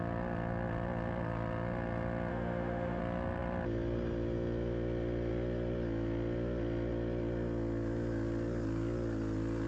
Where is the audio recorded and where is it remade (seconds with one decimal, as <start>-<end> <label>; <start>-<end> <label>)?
0.0-2.3 recorded; 2.3-3.0 remade; 3.0-9.7 recorded